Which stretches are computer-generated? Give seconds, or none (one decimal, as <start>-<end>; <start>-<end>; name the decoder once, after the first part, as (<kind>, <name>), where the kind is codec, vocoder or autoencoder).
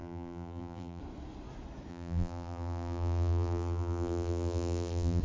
0.0-1.0 (vocoder, BigVGAN v2); 1.9-5.2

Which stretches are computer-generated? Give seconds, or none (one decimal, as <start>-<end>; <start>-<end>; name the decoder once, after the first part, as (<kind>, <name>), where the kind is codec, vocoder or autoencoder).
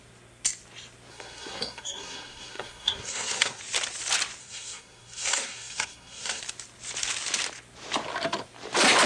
1.1-3.6 (codec, SNAC); 4.4-6.4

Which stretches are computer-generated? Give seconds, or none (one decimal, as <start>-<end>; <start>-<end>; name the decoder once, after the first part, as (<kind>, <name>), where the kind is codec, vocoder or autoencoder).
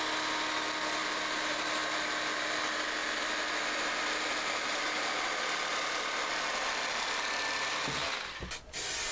none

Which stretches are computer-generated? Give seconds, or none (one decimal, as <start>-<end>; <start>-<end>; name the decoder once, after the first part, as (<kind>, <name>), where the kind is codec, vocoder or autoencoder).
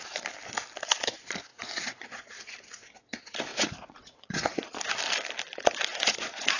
1.5-2.4 (vocoder, Vocos); 3.5-4.9; 5.9-6.6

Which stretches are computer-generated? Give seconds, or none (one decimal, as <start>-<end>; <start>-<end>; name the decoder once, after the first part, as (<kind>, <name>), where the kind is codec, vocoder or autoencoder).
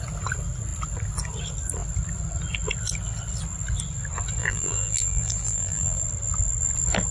4.4-6.0 (vocoder, BigVGAN v2)